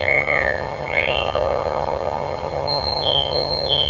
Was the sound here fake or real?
fake